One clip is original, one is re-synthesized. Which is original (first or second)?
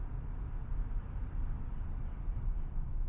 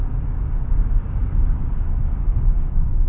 first